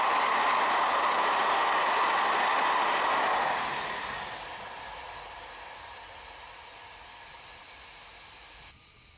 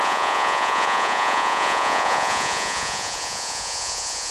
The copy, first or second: second